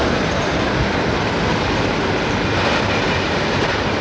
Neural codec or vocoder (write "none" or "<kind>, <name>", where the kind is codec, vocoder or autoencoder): none